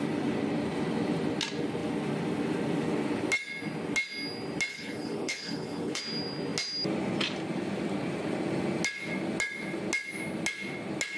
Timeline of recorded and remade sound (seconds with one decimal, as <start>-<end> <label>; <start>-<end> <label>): 0.0-4.7 recorded; 4.7-6.0 remade; 6.0-11.2 recorded